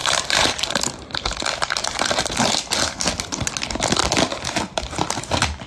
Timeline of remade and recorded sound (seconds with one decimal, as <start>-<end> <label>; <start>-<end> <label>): 0.0-2.4 remade; 2.4-4.0 recorded; 4.0-4.8 remade; 4.8-5.7 recorded